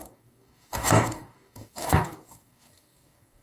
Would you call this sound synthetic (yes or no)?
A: yes